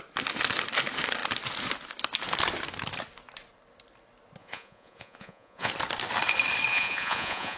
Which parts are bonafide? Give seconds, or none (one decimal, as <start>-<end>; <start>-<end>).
0.0-4.4; 5.7-6.7